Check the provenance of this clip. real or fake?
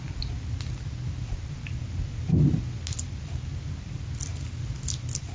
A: real